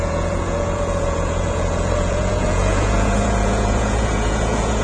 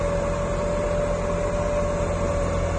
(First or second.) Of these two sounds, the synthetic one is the first